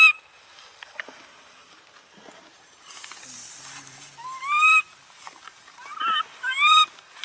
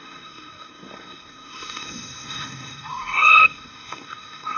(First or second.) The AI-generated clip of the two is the second